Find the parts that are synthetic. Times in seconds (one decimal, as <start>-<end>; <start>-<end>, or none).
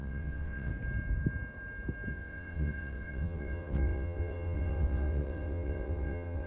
0.0-0.7; 2.1-6.5